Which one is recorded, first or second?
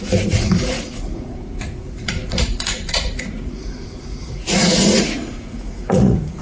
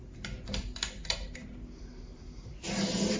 second